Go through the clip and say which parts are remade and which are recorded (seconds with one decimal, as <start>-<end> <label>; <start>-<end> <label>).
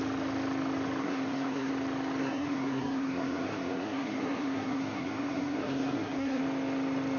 0.0-1.0 recorded; 1.0-1.7 remade; 1.7-2.2 recorded; 2.2-6.4 remade; 6.4-7.2 recorded